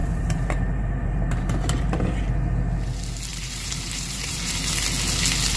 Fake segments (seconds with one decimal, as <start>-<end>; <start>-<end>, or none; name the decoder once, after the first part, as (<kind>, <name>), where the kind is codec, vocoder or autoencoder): 0.0-2.2 (vocoder, BigVGAN v2); 3.3-4.5